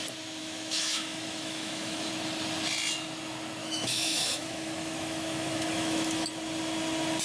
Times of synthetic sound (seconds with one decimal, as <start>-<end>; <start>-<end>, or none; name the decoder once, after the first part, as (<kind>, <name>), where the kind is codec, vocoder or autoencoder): 0.4-2.1 (autoencoder, DAC-VAE); 3.6-6.3